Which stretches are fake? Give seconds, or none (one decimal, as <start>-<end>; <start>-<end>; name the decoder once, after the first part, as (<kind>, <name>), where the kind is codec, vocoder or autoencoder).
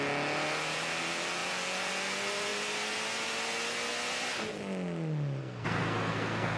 5.4-6.6 (codec, SNAC)